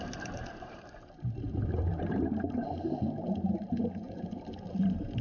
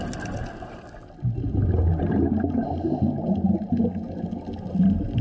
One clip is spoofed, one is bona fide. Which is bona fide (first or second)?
second